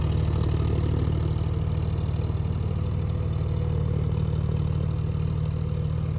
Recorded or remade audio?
recorded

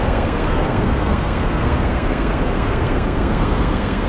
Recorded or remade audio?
remade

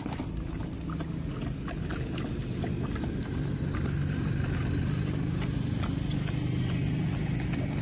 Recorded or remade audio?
recorded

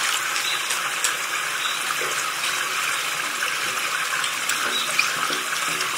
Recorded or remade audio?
recorded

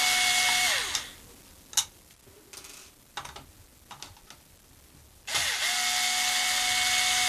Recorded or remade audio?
recorded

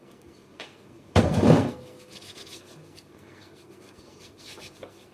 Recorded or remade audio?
remade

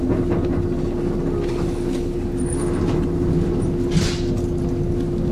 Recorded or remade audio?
recorded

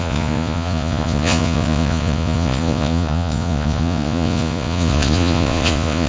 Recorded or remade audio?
remade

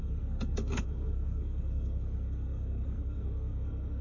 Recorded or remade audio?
remade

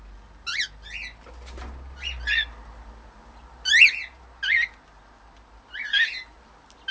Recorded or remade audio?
recorded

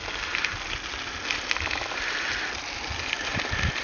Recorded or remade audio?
recorded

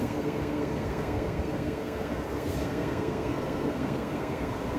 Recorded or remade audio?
remade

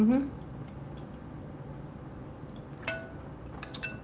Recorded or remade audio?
recorded